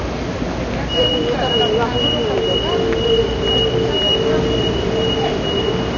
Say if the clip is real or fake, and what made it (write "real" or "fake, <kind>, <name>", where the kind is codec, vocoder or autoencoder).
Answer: real